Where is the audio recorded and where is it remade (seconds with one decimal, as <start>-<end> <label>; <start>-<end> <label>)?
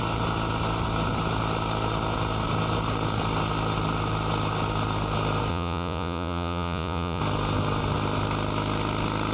0.0-5.5 recorded; 5.5-7.2 remade; 7.2-9.3 recorded